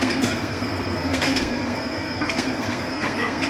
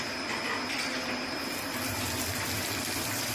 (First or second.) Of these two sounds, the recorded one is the second